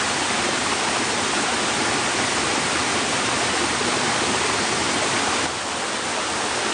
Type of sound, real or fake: real